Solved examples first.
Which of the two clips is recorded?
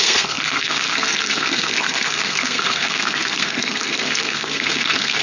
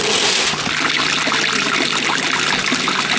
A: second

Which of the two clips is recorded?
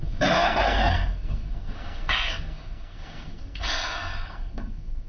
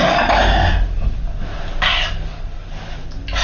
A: second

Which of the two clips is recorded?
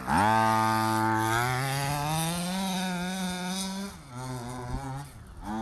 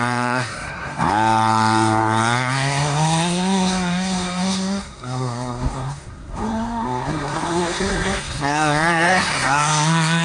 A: first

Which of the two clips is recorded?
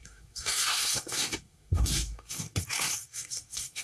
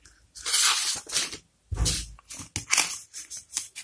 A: second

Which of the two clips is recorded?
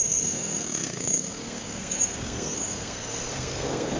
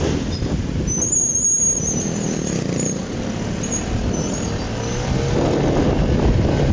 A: second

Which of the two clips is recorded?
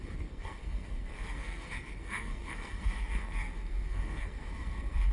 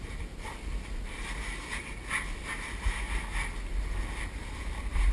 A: second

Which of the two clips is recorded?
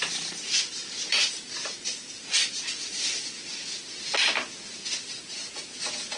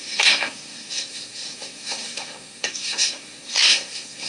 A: first